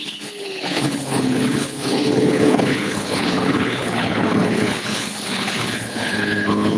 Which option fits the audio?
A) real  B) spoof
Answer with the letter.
B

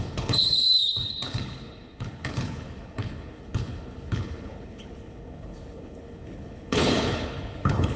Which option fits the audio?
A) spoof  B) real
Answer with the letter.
A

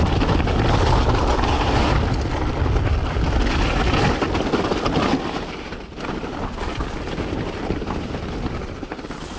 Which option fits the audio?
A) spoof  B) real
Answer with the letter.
B